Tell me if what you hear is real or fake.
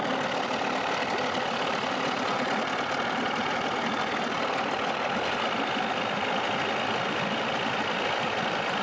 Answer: real